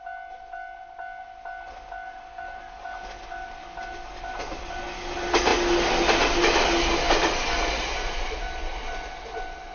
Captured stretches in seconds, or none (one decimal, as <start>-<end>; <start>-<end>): 0.0-9.7